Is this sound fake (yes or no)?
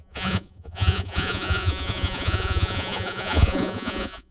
yes